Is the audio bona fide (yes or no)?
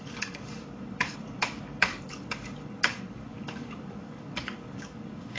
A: no